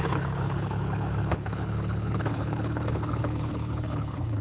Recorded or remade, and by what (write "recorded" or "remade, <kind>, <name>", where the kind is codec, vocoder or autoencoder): remade, codec, HILCodec